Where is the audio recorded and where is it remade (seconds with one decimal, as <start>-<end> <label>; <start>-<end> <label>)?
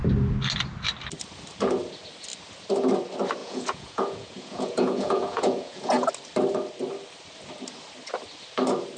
0.0-3.4 recorded; 3.4-6.1 remade; 6.1-9.0 recorded